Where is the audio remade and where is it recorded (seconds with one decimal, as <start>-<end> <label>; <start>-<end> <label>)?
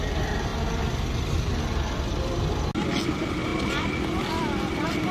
0.0-3.5 recorded; 3.5-4.2 remade; 4.2-5.1 recorded